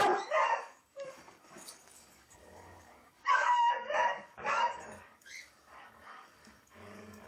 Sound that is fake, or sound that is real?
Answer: fake